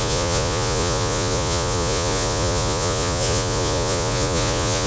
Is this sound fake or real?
fake